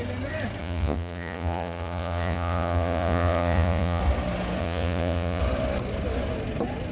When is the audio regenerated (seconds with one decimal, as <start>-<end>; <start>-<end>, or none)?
0.6-4.0; 4.6-5.4